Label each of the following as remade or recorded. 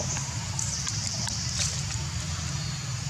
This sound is remade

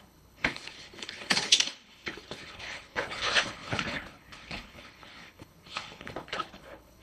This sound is remade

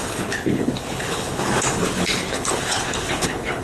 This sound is remade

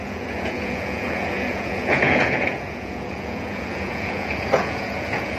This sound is remade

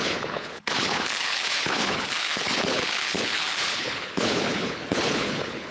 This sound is remade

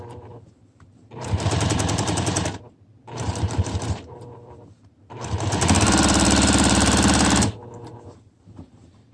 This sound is remade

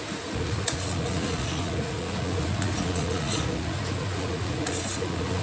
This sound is remade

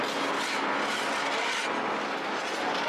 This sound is recorded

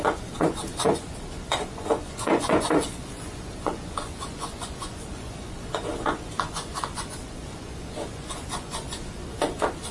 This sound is remade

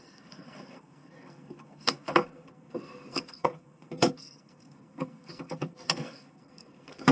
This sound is remade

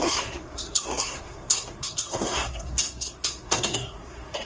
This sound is remade